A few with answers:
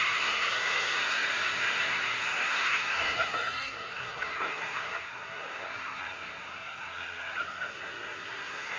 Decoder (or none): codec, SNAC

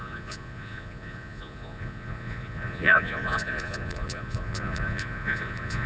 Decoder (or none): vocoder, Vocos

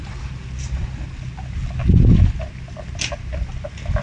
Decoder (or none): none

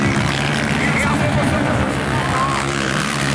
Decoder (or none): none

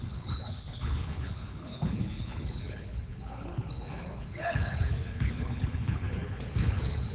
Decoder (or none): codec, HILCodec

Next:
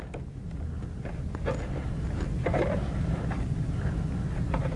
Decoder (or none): none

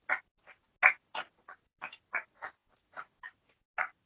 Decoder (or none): none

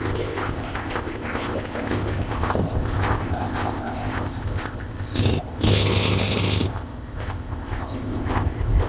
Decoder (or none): codec, ZipCodec